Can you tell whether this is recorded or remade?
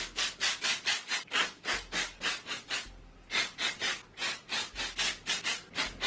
recorded